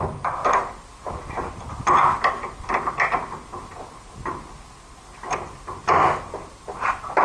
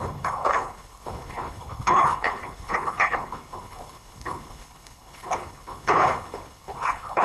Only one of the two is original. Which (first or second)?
first